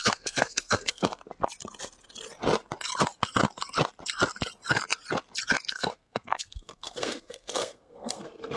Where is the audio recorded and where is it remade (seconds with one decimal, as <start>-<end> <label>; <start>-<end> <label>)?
0.0-1.2 remade; 1.2-5.7 recorded; 5.7-8.6 remade

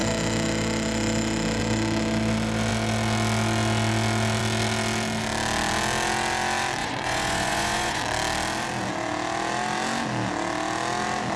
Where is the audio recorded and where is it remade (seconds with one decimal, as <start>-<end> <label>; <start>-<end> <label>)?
0.0-6.8 recorded; 6.8-8.0 remade; 8.0-11.4 recorded

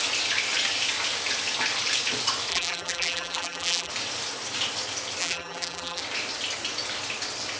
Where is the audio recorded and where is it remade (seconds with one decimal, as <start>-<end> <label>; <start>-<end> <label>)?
0.0-2.5 recorded; 2.5-3.9 remade; 3.9-5.2 recorded; 5.2-6.0 remade; 6.0-7.6 recorded

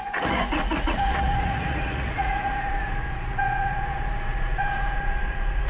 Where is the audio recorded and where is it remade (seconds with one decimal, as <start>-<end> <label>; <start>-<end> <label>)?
0.0-5.7 remade

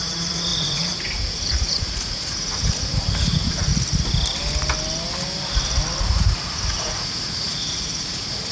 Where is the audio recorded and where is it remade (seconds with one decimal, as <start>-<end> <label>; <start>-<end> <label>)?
0.0-3.7 remade; 3.7-6.0 recorded; 6.0-8.5 remade